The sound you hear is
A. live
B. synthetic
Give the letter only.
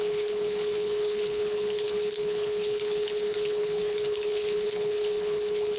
B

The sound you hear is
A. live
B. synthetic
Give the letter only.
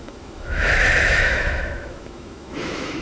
B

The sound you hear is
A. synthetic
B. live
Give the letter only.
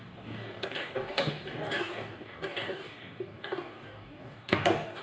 A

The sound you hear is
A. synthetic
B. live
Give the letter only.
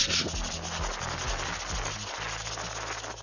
B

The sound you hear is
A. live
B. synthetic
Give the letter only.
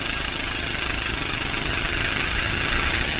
B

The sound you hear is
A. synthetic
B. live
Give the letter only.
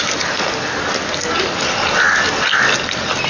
B